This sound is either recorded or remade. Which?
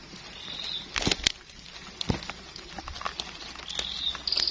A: recorded